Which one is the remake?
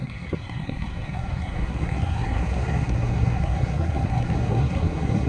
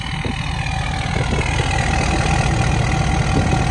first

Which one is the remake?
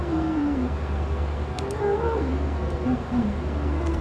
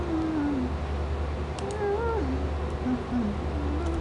first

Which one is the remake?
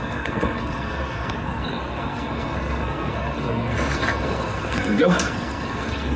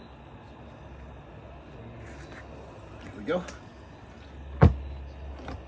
first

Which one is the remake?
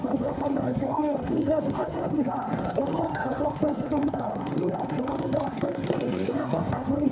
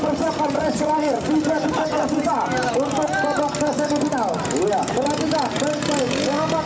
first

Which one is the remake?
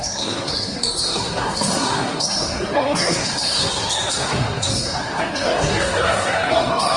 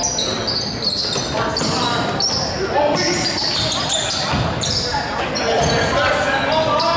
first